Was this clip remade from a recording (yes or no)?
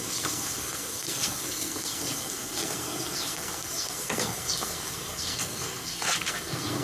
yes